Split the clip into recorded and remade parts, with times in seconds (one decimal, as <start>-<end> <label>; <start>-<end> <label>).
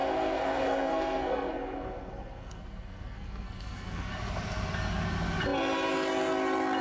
0.0-4.1 remade; 4.1-6.8 recorded